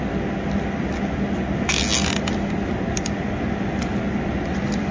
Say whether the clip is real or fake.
real